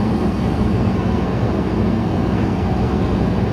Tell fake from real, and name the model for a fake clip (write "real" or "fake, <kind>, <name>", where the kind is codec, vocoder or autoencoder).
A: fake, codec, SNAC